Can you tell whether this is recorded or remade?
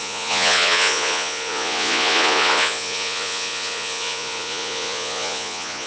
remade